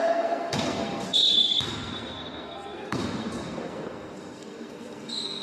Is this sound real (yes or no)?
no